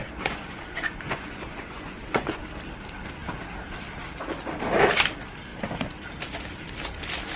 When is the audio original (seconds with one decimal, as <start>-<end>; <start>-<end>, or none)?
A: 2.4-7.4